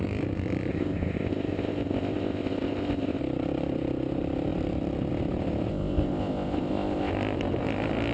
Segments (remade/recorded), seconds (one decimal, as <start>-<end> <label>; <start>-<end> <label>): 0.0-0.7 recorded; 0.7-3.2 remade; 3.2-5.7 recorded; 5.7-7.1 remade; 7.1-8.1 recorded